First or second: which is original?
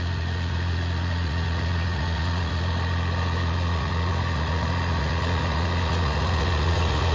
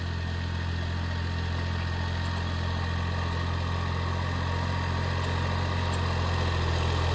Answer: second